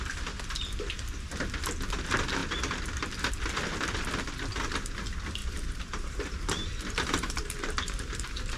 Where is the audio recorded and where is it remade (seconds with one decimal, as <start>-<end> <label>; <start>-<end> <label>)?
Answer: 0.0-5.4 recorded; 5.4-8.6 remade